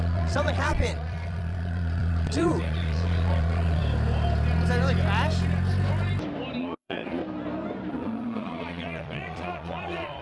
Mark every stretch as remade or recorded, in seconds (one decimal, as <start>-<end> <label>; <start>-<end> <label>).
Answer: 0.0-3.8 remade; 3.8-6.6 recorded; 6.6-7.2 remade; 7.2-7.9 recorded; 7.9-10.2 remade